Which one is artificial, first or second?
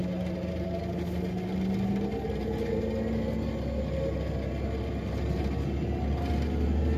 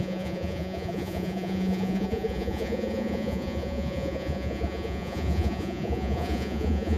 second